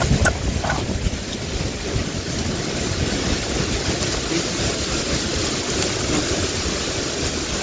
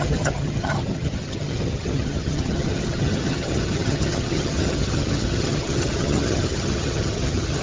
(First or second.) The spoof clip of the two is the second